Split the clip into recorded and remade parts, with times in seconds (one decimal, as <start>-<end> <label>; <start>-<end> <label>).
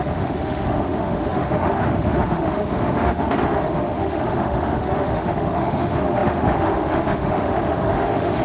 0.0-8.4 remade